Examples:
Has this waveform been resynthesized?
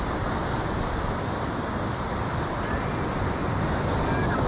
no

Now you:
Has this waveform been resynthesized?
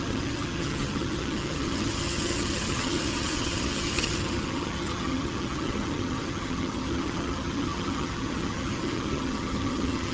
yes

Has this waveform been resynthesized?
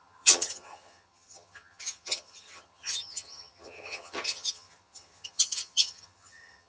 yes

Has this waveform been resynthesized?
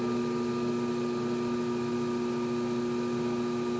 no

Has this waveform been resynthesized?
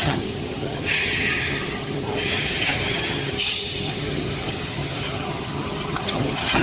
yes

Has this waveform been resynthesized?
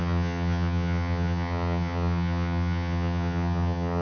yes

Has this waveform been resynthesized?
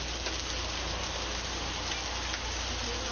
no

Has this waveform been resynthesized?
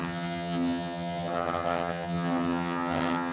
yes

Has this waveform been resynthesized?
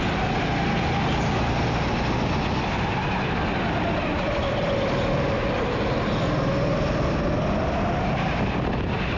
no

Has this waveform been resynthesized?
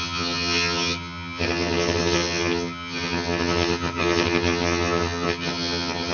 yes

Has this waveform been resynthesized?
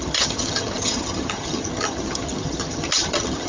yes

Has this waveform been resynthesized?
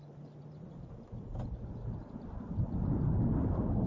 no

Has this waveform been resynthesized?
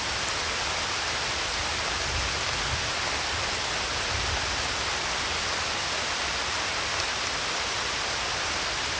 no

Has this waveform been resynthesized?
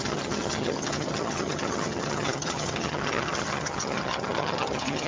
yes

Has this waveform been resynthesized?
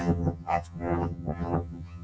yes